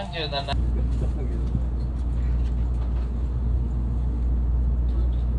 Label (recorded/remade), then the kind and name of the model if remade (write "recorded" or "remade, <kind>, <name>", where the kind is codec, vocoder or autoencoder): recorded